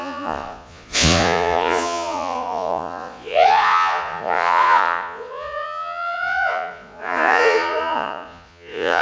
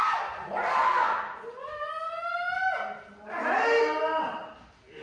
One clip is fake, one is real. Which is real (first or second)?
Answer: second